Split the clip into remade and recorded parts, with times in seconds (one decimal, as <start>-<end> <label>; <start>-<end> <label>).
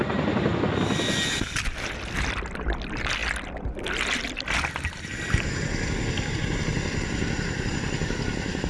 0.0-8.7 recorded